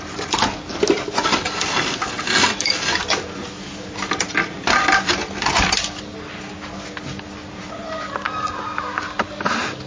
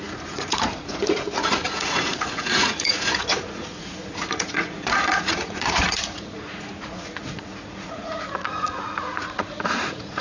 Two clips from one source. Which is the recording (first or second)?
first